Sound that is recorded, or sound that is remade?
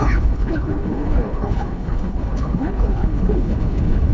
remade